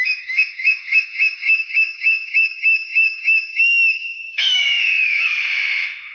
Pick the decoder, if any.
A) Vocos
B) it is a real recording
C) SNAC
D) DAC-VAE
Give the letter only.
D